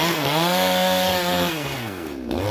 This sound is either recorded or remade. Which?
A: remade